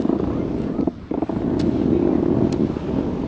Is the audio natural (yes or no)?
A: yes